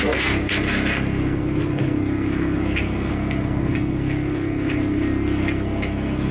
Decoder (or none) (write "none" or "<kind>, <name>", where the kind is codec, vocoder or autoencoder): codec, SNAC